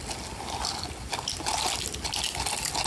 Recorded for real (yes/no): yes